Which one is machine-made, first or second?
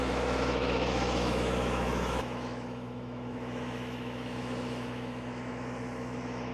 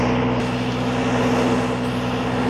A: first